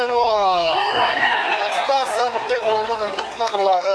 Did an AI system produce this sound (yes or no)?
yes